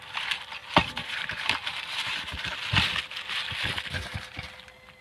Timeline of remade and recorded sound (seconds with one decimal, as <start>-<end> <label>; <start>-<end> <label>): 0.0-2.3 remade; 2.3-5.0 recorded